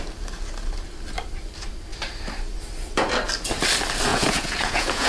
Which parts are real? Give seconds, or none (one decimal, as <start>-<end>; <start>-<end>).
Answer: 0.0-4.1